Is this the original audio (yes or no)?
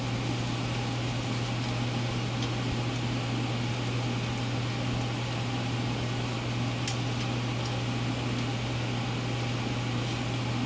yes